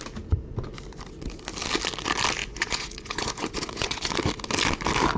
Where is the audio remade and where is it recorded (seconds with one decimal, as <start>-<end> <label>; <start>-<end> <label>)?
0.0-2.4 recorded; 2.4-4.1 remade; 4.1-5.2 recorded

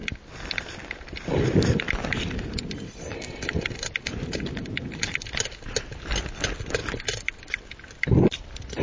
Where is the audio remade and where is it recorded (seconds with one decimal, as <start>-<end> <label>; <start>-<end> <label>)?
0.0-8.8 recorded

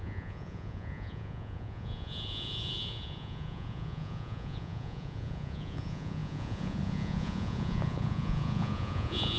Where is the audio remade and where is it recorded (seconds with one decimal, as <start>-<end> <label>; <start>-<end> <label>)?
0.0-9.4 remade

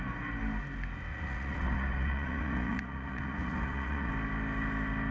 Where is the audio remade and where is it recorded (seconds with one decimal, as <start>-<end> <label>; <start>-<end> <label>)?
0.0-1.1 recorded; 1.1-4.1 remade; 4.1-5.1 recorded

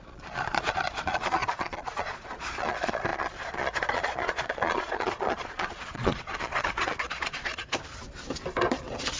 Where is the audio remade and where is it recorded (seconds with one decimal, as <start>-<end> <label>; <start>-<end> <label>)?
0.0-7.6 remade; 7.6-9.2 recorded

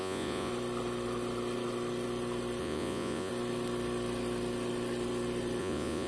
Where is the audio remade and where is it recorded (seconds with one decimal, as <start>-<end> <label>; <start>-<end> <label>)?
0.0-0.5 remade; 0.5-2.6 recorded; 2.6-3.3 remade; 3.3-5.6 recorded; 5.6-6.1 remade

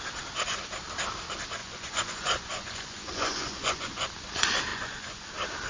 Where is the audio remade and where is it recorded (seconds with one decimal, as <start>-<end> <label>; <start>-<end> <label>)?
0.0-1.6 recorded; 1.6-4.1 remade; 4.1-4.7 recorded; 4.7-5.3 remade; 5.3-5.7 recorded

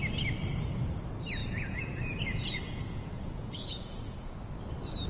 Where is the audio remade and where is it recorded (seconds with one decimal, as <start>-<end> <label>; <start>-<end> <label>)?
0.0-1.4 recorded; 1.4-4.5 remade; 4.5-5.1 recorded